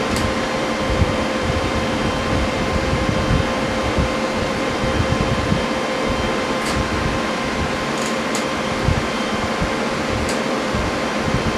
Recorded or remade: remade